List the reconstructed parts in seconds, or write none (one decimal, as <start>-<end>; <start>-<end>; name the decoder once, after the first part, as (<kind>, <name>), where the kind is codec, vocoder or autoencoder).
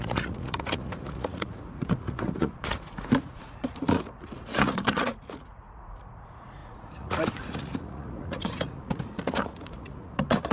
0.0-10.5 (vocoder, Vocos)